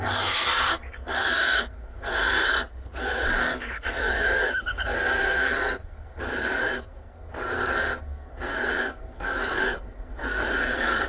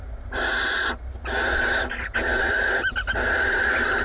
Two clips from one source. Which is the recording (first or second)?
second